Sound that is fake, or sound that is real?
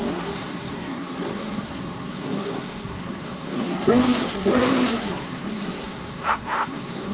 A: fake